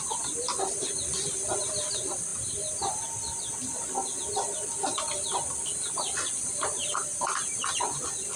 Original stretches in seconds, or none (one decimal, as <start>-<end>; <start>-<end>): 0.0-2.3; 3.0-6.8; 7.3-8.4